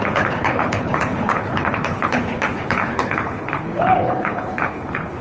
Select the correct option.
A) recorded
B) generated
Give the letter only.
B